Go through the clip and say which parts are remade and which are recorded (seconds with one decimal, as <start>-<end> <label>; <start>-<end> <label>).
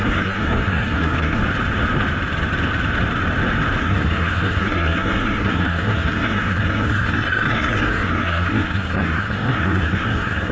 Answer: 0.0-1.4 remade; 1.4-3.8 recorded; 3.8-10.5 remade